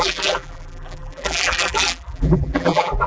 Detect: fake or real fake